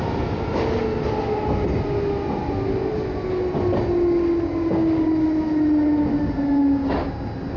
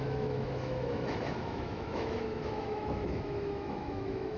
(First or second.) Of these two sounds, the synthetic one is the second